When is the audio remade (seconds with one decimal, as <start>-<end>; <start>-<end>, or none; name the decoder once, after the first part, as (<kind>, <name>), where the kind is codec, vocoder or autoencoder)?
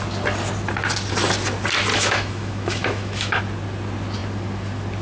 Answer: 1.9-3.4 (autoencoder, DAC-VAE)